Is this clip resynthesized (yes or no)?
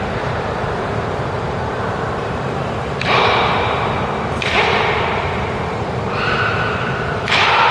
yes